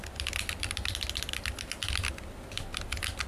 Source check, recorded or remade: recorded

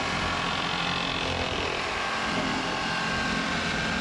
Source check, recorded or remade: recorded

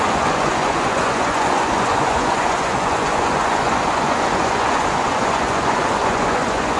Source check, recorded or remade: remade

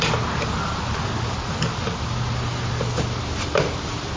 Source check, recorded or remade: recorded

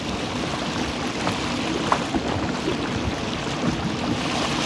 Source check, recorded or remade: recorded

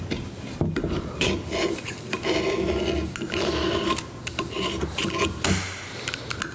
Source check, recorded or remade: recorded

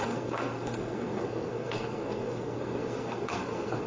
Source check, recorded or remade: remade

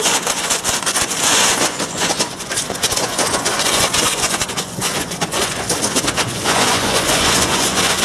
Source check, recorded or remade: remade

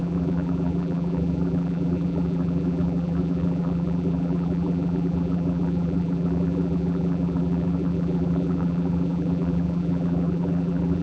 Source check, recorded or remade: remade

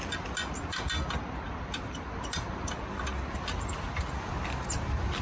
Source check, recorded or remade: recorded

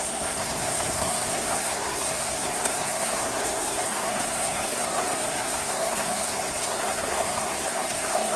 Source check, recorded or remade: remade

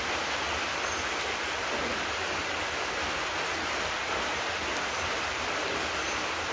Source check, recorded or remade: recorded